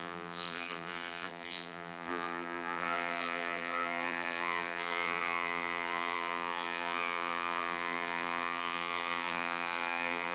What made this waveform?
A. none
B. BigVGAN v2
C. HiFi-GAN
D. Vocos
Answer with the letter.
B